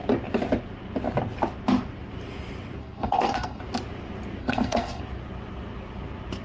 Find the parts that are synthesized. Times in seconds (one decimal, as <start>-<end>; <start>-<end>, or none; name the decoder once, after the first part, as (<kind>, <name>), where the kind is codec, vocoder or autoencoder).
2.8-3.6 (codec, SNAC); 4.4-5.0